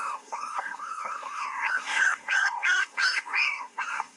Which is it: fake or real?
fake